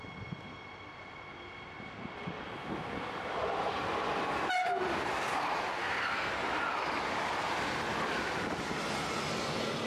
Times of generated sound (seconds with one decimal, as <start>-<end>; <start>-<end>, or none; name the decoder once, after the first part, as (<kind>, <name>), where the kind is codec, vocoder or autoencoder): 5.8-6.3 (codec, SNAC)